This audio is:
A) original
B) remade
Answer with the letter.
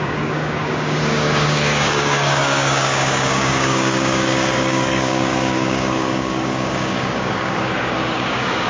B